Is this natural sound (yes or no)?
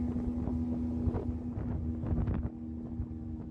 yes